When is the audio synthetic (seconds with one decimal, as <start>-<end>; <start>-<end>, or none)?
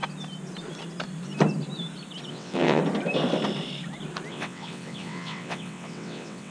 2.3-2.8; 4.3-6.5